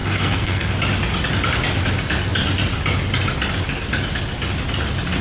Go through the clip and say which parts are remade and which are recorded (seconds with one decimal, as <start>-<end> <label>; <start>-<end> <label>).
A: 0.0-0.7 remade; 0.7-5.2 recorded